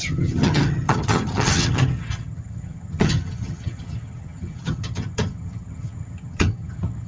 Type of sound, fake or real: fake